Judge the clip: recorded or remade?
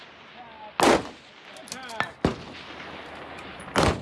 recorded